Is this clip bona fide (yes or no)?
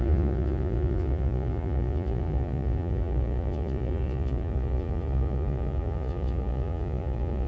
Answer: no